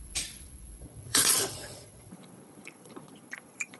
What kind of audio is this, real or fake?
fake